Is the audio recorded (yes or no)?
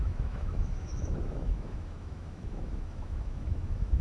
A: no